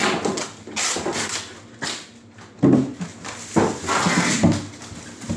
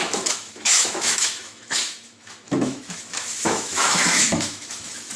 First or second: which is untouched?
first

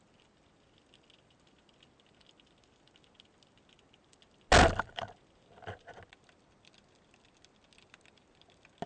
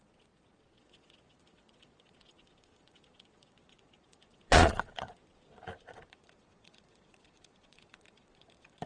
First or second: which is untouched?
first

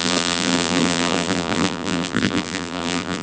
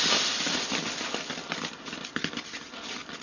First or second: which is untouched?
second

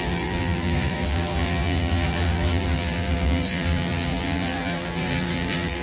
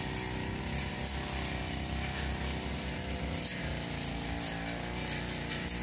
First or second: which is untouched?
second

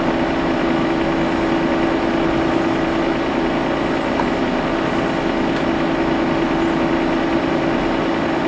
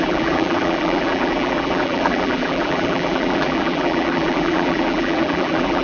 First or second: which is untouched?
first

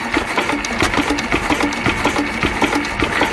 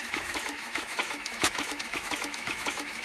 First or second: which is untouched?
first